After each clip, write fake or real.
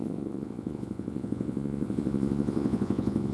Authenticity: fake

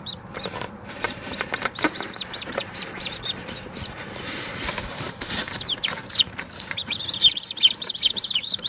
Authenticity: fake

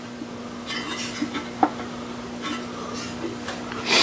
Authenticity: real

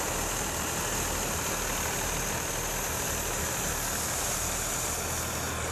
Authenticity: real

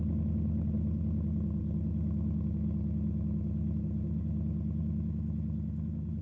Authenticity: real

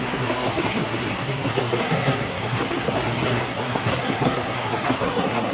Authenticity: fake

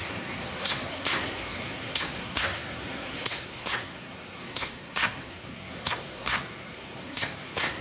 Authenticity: fake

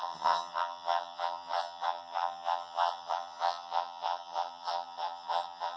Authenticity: fake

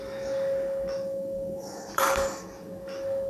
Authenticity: fake